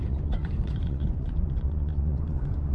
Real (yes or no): no